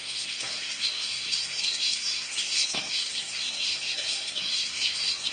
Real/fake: fake